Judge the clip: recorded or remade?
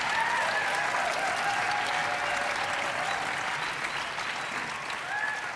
recorded